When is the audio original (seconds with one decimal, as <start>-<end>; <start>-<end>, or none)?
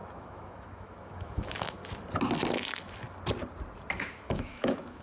1.8-4.0